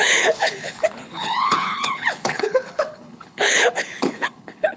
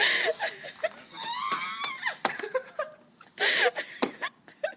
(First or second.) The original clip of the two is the second